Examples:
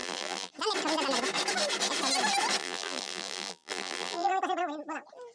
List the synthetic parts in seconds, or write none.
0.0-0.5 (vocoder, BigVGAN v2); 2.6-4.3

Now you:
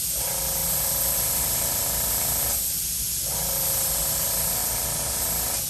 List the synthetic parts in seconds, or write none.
none

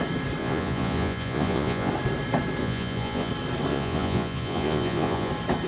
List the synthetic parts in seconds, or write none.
0.4-1.9 (vocoder, Vocos); 2.6-3.3; 3.7-5.3

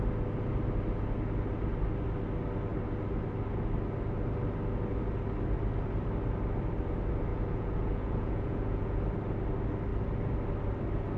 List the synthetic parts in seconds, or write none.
7.3-9.0 (vocoder, Vocos)

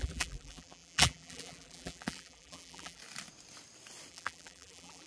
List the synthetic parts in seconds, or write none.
0.0-3.0 (vocoder, BigVGAN v2); 4.1-5.1

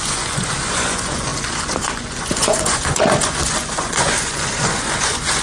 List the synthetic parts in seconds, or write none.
0.0-5.4 (vocoder, Vocos)

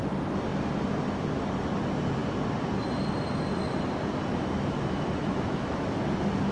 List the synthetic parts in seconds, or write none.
4.3-5.9 (autoencoder, DAC-VAE)

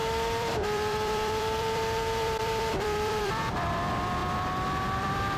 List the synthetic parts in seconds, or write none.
0.0-4.2 (vocoder, BigVGAN v2); 5.0-5.4